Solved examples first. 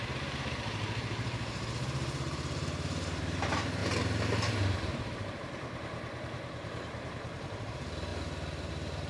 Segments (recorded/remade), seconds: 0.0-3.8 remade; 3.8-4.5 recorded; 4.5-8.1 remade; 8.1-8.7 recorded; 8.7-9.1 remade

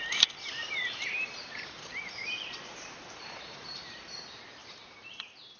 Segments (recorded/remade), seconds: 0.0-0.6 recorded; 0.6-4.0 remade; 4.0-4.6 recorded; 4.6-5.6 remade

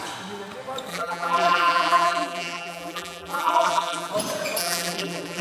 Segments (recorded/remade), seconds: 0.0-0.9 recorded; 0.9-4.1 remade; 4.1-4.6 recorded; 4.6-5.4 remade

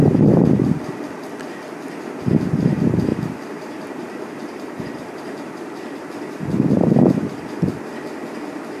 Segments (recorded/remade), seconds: 0.0-3.1 recorded; 3.1-6.0 remade; 6.0-8.8 recorded

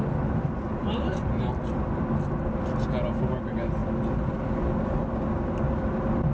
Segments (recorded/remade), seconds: 0.0-0.8 recorded; 0.8-1.5 remade; 1.5-6.3 recorded

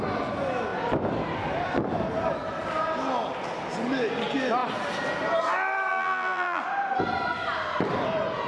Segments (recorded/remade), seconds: 0.0-5.9 recorded; 5.9-6.6 remade; 6.6-8.5 recorded